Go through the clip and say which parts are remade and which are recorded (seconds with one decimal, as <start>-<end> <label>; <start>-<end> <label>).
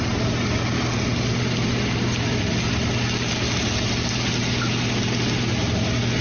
0.0-6.2 recorded